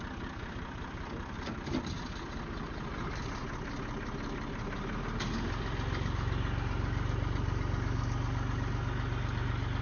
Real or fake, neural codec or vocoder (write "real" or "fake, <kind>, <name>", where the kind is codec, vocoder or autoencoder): real